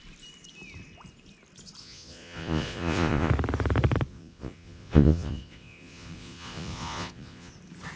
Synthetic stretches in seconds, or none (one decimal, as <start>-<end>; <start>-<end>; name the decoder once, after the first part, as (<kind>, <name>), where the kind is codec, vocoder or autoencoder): 1.8-3.3 (vocoder, Vocos); 4.1-7.5

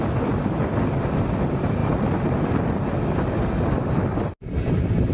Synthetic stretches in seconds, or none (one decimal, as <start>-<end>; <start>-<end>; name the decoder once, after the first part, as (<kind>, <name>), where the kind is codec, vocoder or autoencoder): none

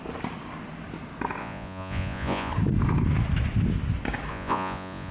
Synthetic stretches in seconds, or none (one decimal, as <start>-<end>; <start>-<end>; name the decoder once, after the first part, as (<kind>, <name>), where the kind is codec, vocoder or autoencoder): 1.4-2.5 (vocoder, Vocos); 4.3-5.1

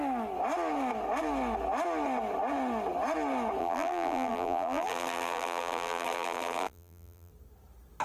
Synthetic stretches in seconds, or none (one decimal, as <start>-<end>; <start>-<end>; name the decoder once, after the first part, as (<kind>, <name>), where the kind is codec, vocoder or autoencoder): 3.6-7.3 (vocoder, BigVGAN v2)

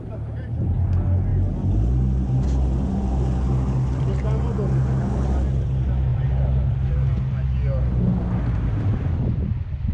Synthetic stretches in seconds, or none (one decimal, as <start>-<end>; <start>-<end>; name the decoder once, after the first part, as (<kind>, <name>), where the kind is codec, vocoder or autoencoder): none

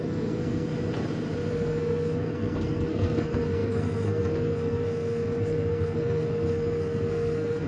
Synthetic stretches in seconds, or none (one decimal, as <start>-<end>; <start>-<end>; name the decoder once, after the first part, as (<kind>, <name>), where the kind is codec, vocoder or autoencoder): 0.0-0.7 (codec, SNAC); 1.5-7.7